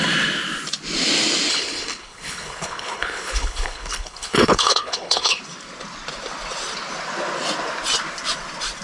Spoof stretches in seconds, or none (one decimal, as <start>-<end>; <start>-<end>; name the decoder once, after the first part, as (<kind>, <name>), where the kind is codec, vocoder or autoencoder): 1.5-5.4 (codec, HILCodec)

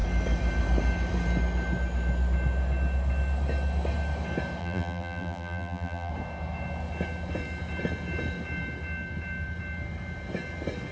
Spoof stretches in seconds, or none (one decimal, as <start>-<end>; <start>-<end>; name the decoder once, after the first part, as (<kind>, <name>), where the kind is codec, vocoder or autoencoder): 4.6-6.1 (vocoder, BigVGAN v2)